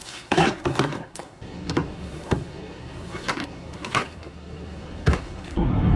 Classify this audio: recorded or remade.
remade